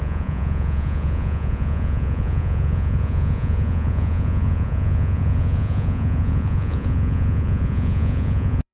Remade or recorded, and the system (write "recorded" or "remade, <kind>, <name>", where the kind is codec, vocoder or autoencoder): remade, vocoder, Vocos